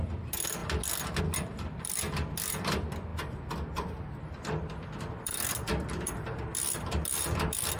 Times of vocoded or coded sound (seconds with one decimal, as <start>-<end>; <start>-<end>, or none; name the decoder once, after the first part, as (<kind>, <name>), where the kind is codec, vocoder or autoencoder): 0.0-0.6 (vocoder, BigVGAN v2); 1.2-3.1; 4.2-7.8